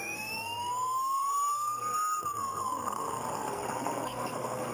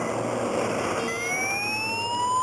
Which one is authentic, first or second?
second